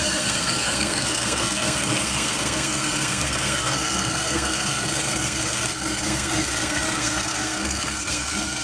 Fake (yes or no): yes